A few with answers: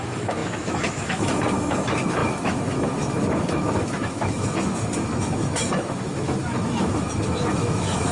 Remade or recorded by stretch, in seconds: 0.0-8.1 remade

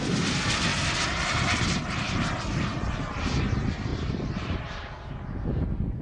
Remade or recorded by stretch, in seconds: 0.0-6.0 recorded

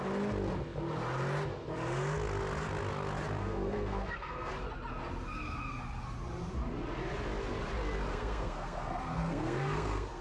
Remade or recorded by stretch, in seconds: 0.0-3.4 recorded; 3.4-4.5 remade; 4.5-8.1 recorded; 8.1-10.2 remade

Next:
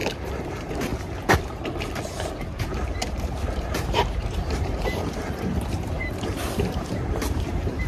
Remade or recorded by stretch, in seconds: 0.0-0.5 recorded; 0.5-0.9 remade; 0.9-3.2 recorded; 3.2-7.9 remade

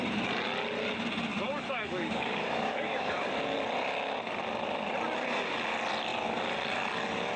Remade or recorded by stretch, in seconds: 0.0-1.3 recorded; 1.3-3.2 remade; 3.2-7.4 recorded